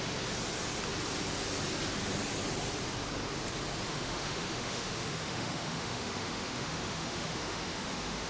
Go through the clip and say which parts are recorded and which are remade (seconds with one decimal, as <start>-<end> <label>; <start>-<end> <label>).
0.0-3.9 recorded; 3.9-8.3 remade